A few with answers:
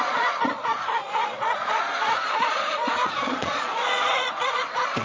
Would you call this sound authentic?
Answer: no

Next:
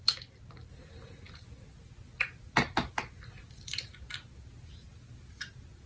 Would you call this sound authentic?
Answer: yes